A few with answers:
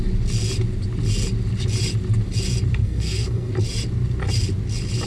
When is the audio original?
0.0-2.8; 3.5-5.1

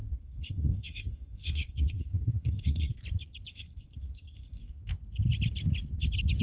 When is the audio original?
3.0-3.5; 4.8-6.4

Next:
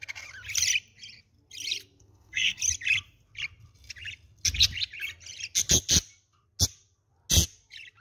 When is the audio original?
0.0-2.0; 2.6-8.0

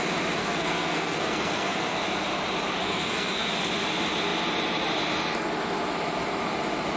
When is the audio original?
0.0-0.4; 2.0-2.8; 3.5-7.0

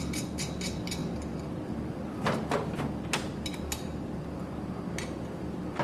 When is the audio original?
0.0-5.8

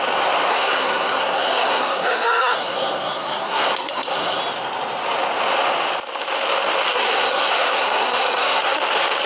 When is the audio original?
0.0-0.5; 4.4-6.9; 8.8-9.3